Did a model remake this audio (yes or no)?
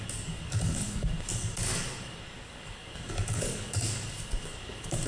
yes